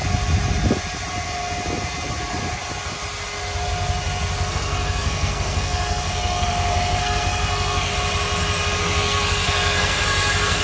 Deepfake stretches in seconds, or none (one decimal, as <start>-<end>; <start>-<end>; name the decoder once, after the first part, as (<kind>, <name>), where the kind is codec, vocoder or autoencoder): 4.5-7.9 (codec, SNAC); 8.8-10.6